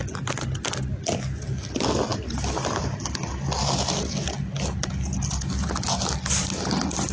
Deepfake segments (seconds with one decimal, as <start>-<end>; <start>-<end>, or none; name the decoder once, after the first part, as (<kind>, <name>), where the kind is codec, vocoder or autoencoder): none